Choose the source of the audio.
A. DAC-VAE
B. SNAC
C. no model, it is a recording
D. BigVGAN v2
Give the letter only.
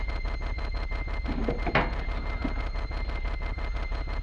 C